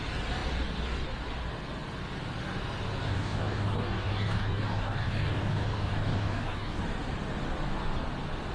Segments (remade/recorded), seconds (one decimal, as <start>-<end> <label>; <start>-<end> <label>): 0.0-3.0 recorded; 3.0-6.8 remade; 6.8-8.5 recorded